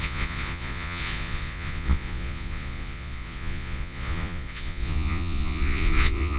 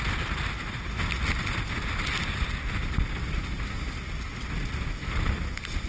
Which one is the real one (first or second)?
second